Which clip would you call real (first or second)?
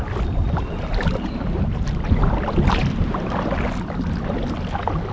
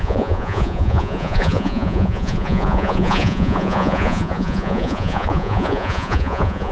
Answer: first